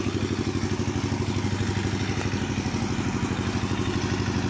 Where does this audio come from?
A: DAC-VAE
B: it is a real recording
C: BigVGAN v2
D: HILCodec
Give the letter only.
B